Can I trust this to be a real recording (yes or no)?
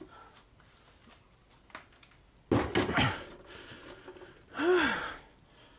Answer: yes